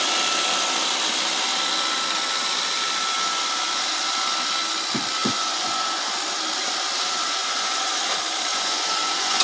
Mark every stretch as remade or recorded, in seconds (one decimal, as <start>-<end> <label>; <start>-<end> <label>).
0.0-5.2 recorded; 5.2-6.1 remade; 6.1-7.4 recorded; 7.4-8.0 remade; 8.0-8.5 recorded; 8.5-9.4 remade